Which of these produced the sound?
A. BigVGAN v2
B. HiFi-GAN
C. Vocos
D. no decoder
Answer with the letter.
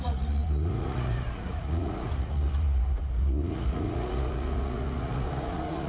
C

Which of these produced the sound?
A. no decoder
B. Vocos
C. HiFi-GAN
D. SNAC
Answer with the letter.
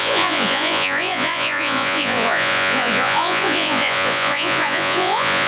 B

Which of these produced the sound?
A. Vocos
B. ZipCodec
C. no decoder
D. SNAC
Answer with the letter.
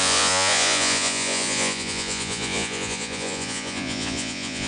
A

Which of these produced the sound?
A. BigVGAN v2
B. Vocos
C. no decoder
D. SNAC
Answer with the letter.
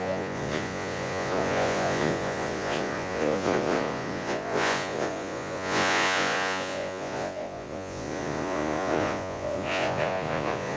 B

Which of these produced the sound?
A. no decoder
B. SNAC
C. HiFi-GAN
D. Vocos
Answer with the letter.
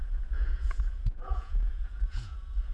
D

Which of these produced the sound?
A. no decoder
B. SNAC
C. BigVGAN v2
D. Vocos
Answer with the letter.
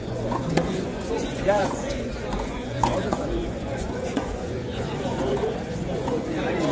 D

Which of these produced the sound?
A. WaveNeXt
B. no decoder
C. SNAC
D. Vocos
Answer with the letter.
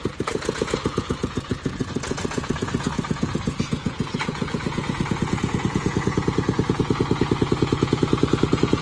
D